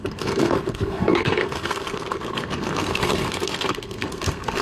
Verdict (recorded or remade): remade